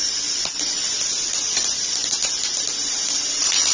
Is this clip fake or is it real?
real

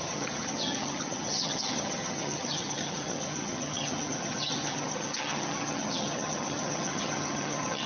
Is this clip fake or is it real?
fake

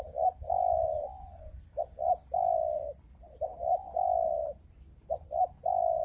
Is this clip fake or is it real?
real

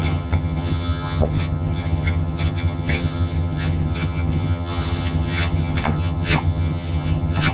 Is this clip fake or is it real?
fake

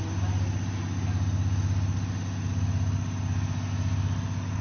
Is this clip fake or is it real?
real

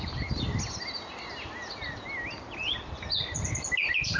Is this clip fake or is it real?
real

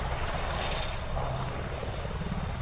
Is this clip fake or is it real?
real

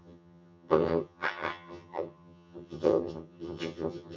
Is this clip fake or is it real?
fake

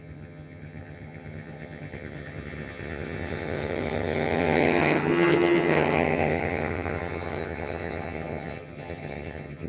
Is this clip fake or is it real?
fake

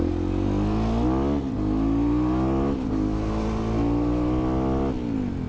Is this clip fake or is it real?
real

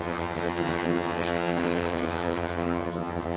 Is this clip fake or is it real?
fake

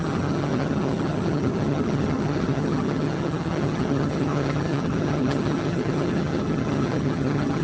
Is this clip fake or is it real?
fake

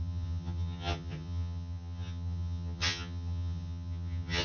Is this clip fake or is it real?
fake